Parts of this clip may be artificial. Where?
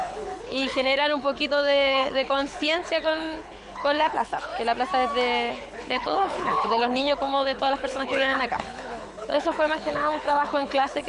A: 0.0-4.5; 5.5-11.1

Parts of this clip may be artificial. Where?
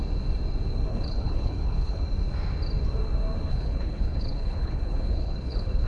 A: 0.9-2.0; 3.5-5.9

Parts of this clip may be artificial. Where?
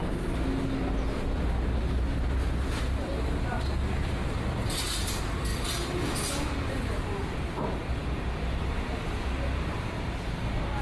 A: none